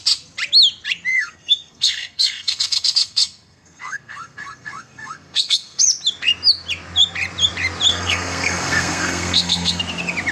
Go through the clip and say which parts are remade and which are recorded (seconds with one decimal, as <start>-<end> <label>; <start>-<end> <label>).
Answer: 0.0-1.1 recorded; 1.1-5.8 remade; 5.8-7.9 recorded; 7.9-9.8 remade; 9.8-10.3 recorded